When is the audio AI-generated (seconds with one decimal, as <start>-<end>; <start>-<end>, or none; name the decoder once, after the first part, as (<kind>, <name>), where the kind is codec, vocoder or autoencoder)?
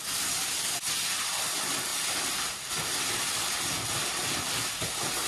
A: none